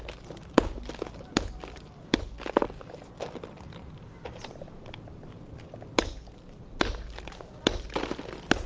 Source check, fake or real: real